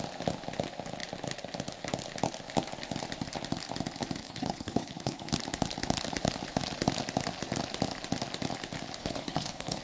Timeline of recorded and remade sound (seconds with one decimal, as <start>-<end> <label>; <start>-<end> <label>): 0.0-4.2 recorded; 4.2-5.3 remade; 5.3-9.0 recorded; 9.0-9.8 remade

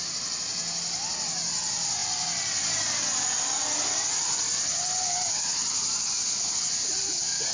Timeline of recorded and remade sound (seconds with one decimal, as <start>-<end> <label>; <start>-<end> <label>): 0.0-7.5 recorded

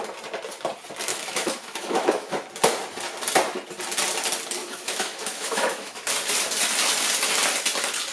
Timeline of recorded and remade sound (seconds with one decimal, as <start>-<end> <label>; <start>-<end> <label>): 0.0-1.1 recorded; 1.1-2.3 remade; 2.3-4.6 recorded; 4.6-6.1 remade; 6.1-8.1 recorded

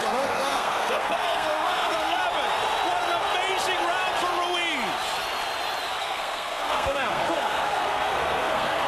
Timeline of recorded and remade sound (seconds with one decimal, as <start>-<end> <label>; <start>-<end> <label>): 0.0-2.2 remade; 2.2-6.0 recorded; 6.0-8.9 remade

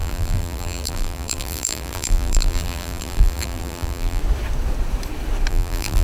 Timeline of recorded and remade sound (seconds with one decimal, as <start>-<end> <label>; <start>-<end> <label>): 0.0-4.2 remade; 4.2-5.5 recorded; 5.5-6.0 remade

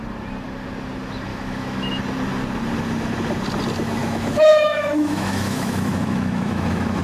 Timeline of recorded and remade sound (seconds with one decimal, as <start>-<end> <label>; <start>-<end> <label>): 0.0-1.3 recorded; 1.3-2.0 remade; 2.0-4.0 recorded; 4.0-7.0 remade